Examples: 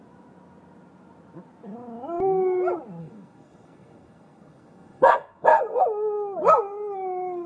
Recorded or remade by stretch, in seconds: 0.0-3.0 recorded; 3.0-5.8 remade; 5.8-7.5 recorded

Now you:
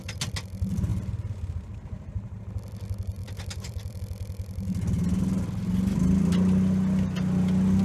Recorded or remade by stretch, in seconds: 0.0-0.9 recorded; 0.9-2.4 remade; 2.4-3.2 recorded; 3.2-4.0 remade; 4.0-7.8 recorded

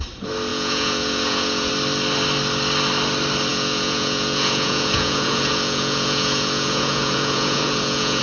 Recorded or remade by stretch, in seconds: 0.0-0.5 recorded; 0.5-1.7 remade; 1.7-3.5 recorded; 3.5-8.2 remade

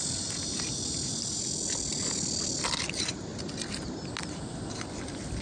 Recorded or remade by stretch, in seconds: 0.0-5.4 recorded

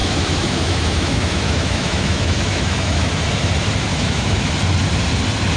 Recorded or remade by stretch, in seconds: 0.0-3.1 remade; 3.1-3.9 recorded; 3.9-4.5 remade; 4.5-5.6 recorded

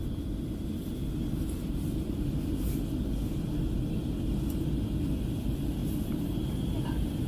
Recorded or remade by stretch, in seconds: 0.0-7.3 recorded

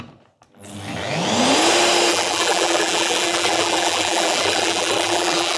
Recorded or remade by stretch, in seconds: 0.0-2.1 recorded; 2.1-5.6 remade

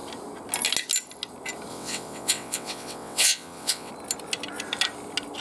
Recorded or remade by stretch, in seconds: 0.0-1.7 recorded; 1.7-3.9 remade; 3.9-5.4 recorded